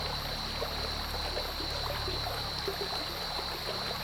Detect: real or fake real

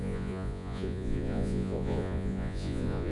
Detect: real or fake fake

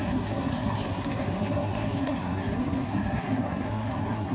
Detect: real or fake fake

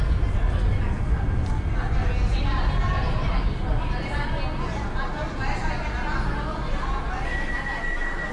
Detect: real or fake real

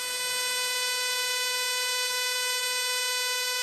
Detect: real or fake real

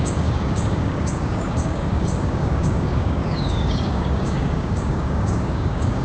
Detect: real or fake fake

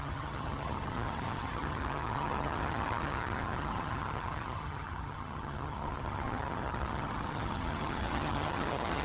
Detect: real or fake fake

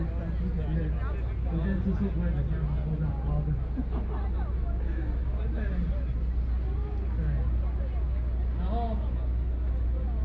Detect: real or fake real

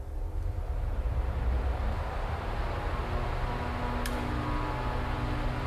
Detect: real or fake real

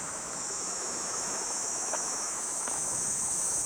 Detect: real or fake fake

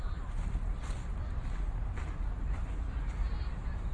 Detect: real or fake real